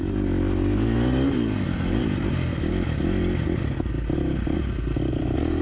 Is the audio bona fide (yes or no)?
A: yes